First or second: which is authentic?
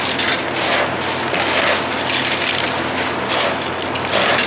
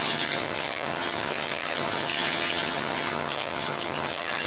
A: first